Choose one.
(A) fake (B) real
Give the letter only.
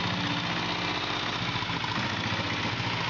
B